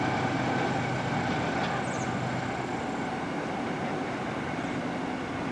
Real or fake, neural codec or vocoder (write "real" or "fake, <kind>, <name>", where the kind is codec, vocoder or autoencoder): real